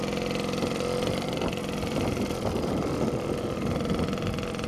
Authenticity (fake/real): fake